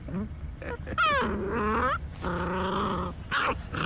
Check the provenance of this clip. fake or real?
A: real